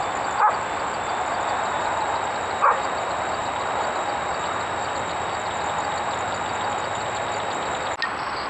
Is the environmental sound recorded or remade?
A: recorded